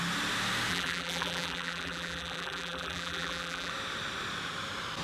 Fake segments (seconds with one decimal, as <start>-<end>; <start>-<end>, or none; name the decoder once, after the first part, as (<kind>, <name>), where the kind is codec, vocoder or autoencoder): 0.7-3.7 (vocoder, BigVGAN v2)